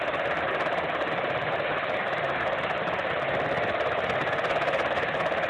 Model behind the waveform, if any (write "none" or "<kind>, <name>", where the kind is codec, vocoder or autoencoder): none